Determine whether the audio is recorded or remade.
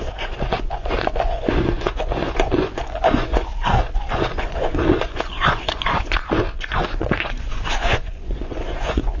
remade